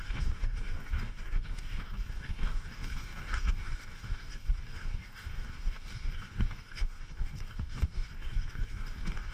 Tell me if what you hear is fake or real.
fake